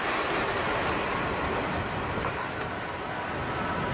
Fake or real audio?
real